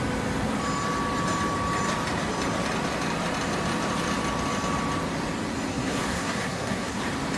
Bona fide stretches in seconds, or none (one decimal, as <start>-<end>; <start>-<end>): 0.0-5.7; 7.0-7.4